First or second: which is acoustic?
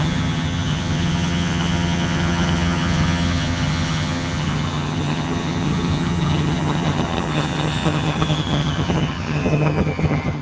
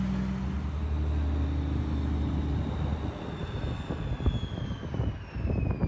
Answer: second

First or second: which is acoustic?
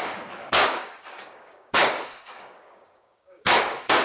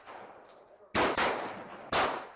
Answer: second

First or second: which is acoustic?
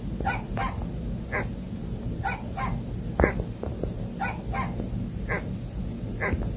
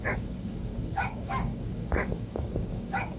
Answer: first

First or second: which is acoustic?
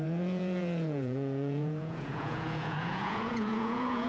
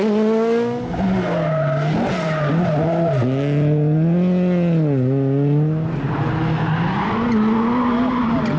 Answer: second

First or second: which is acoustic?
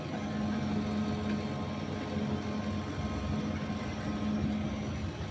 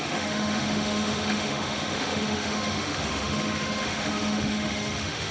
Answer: first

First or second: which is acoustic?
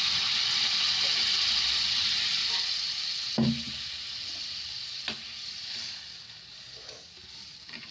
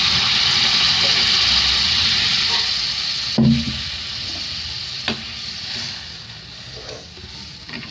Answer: second